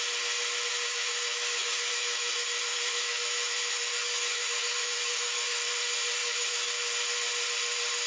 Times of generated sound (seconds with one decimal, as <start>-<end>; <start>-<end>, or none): 0.7-5.6; 6.2-6.9